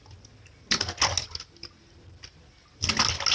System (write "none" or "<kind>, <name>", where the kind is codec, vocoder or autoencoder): none